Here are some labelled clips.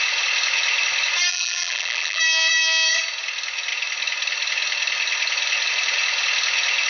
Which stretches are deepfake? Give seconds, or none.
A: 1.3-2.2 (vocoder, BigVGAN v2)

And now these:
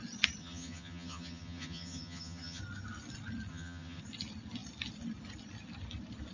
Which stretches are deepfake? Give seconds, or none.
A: 0.4-2.6 (vocoder, HiFi-GAN); 3.5-4.0

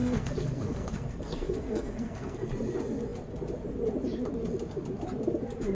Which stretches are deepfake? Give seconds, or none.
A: 0.0-2.5 (codec, SNAC)

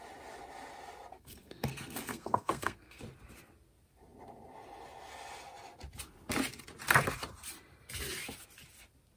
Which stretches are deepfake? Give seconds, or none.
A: 1.1-3.0 (codec, SNAC)

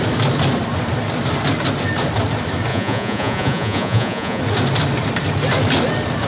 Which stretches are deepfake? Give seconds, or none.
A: 2.7-4.4 (vocoder, Vocos)

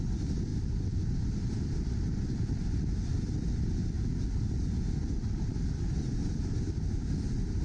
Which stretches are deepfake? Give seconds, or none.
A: none

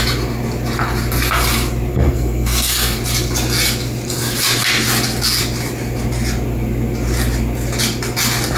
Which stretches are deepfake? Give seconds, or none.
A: 1.9-3.0 (codec, SNAC)

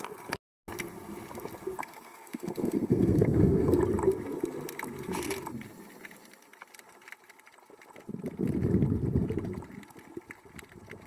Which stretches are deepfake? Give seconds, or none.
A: 1.8-3.8 (codec, SNAC)